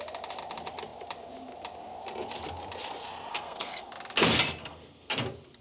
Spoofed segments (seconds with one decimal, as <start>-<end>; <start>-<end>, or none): 3.3-3.9; 4.6-5.1